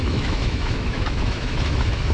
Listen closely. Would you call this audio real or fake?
fake